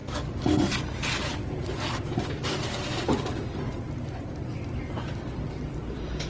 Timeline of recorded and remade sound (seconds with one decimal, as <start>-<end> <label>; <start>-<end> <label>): 0.0-6.3 recorded